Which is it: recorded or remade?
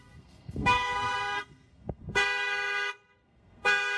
remade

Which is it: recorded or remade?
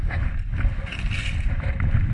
recorded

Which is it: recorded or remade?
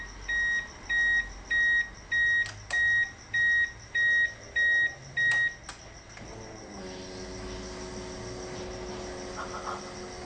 recorded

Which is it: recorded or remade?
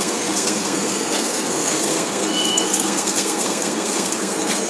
remade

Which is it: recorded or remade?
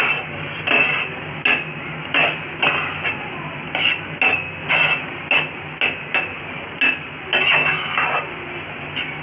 recorded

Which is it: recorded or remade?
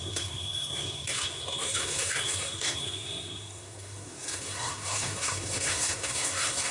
remade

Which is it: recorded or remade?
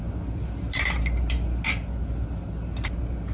recorded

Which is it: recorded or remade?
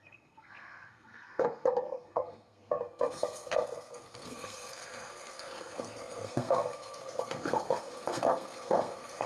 remade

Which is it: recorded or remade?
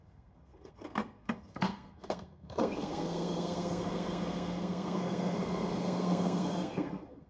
remade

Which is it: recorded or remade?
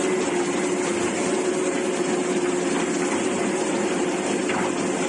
recorded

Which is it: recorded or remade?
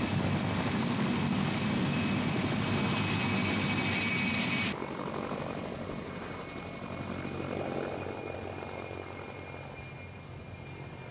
recorded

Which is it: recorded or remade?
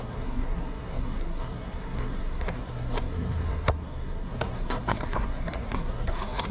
remade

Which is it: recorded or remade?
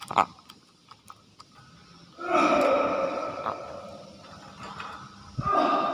recorded